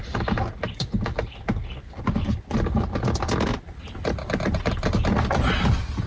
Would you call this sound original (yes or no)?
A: yes